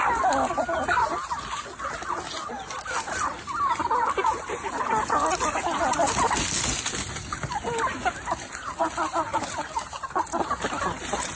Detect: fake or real real